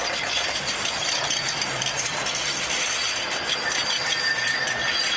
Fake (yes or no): no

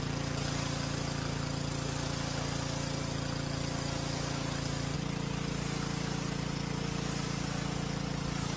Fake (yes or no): no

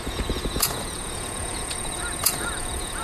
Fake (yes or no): yes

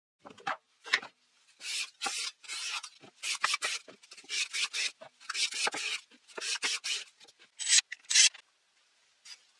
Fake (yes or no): no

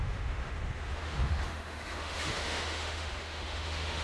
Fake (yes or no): yes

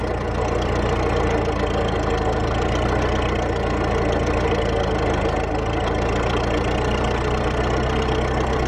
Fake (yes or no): no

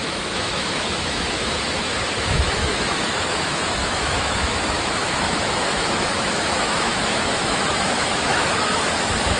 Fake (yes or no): yes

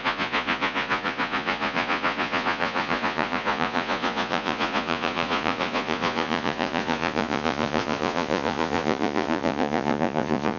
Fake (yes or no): yes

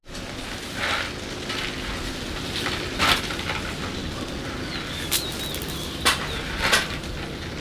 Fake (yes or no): no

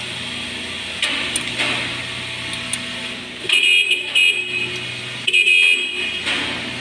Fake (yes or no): no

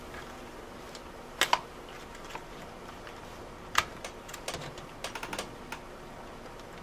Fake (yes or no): no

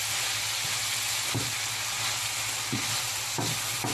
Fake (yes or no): no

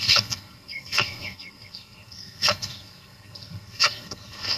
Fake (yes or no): yes